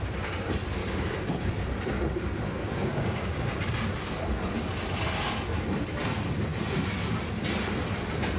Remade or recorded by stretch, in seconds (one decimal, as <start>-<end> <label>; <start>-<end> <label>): 0.0-0.8 recorded; 0.8-1.5 remade; 1.5-2.6 recorded; 2.6-3.4 remade; 3.4-8.4 recorded